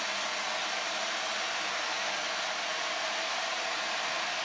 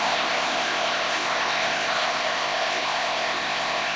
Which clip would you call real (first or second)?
first